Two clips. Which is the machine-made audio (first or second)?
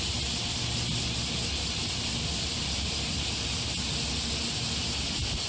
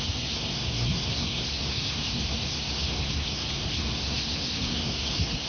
second